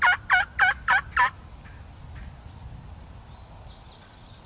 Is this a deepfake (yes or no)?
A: no